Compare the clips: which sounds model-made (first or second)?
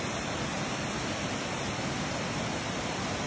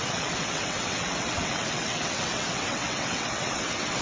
second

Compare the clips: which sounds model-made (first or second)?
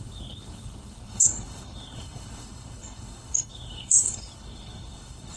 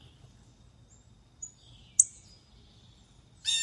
first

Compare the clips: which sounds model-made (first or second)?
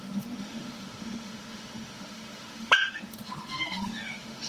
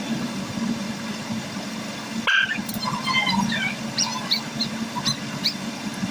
first